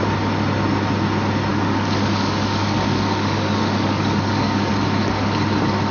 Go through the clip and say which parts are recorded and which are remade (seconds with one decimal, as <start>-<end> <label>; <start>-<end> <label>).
0.0-1.5 recorded; 1.5-4.7 remade; 4.7-5.9 recorded